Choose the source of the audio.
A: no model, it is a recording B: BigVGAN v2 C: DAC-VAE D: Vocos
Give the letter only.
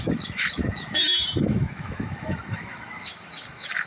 C